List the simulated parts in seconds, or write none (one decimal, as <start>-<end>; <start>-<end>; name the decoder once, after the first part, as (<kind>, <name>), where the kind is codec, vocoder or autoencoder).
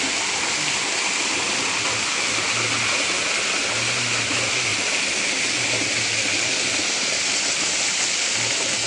none